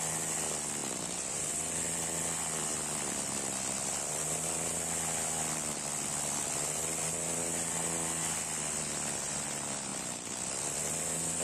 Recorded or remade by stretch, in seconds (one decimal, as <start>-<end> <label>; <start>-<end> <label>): 0.0-11.4 recorded